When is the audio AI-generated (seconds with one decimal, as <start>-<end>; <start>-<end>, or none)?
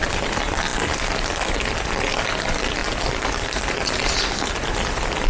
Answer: none